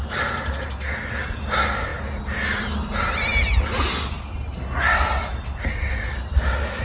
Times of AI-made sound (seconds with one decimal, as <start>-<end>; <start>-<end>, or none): none